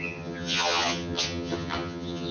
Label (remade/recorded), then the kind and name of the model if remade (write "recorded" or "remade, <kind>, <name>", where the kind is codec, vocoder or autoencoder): remade, vocoder, HiFi-GAN